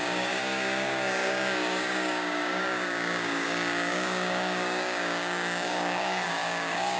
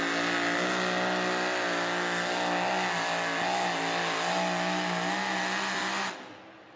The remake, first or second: first